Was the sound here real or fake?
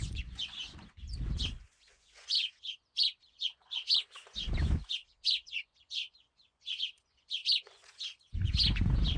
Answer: fake